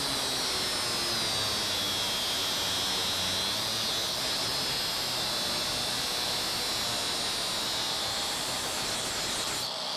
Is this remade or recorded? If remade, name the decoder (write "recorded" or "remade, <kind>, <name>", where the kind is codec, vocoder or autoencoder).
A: recorded